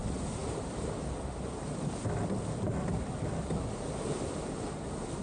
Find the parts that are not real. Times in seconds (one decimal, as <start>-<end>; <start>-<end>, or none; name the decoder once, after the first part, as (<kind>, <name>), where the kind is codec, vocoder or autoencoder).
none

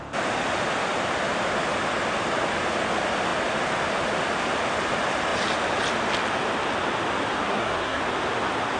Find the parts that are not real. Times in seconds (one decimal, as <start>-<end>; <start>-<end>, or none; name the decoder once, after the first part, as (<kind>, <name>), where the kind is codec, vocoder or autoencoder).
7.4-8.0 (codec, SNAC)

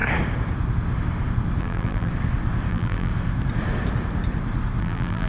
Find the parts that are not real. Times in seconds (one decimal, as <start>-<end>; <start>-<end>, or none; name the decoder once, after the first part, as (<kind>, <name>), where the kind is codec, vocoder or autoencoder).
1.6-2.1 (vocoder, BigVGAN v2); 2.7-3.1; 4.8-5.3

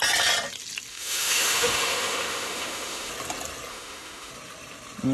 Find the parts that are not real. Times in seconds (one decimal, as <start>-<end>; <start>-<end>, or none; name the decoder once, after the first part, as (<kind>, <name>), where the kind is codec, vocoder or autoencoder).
0.9-3.1 (autoencoder, DAC-VAE); 3.7-4.3

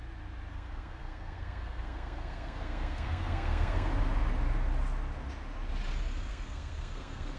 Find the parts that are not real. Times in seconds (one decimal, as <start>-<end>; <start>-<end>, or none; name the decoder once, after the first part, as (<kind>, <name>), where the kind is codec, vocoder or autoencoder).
0.5-3.9 (codec, SNAC); 6.3-7.4